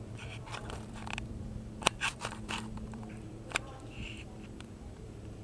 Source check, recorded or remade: remade